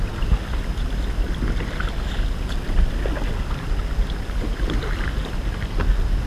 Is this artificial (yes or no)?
no